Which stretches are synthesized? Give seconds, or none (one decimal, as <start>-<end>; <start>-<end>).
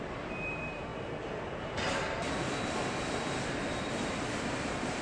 0.0-0.9; 3.9-5.0